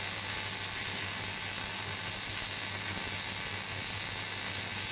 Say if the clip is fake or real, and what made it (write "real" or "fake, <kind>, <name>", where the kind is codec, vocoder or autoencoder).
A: real